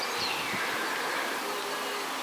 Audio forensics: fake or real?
real